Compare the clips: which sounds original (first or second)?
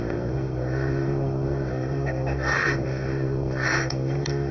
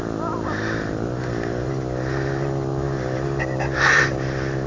second